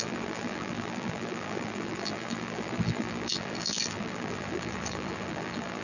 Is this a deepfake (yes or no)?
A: yes